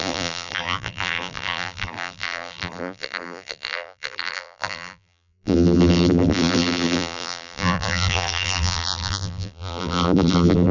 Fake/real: fake